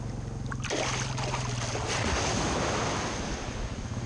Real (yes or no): yes